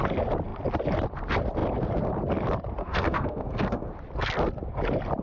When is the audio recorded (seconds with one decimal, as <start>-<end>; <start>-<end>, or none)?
0.0-2.8; 3.9-5.2